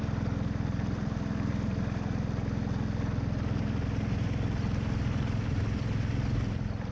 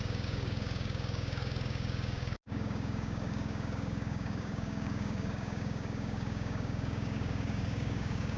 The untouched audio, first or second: first